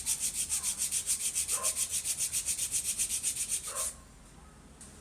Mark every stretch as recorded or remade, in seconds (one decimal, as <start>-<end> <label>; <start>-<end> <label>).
0.0-5.0 recorded